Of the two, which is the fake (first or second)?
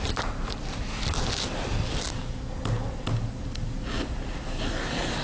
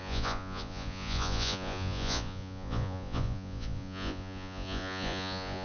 second